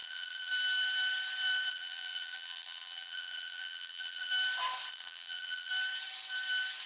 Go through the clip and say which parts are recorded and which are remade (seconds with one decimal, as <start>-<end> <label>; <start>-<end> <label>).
0.0-0.5 remade; 0.5-1.7 recorded; 1.7-4.3 remade; 4.3-4.9 recorded; 4.9-5.7 remade; 5.7-6.9 recorded